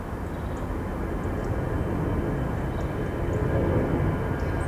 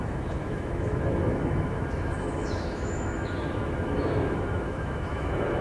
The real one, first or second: first